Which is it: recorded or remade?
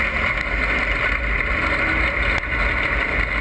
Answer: recorded